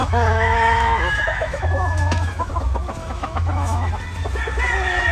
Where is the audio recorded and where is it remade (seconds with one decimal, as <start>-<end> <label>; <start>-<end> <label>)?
0.0-2.5 remade; 2.5-3.0 recorded; 3.0-3.9 remade; 3.9-5.1 recorded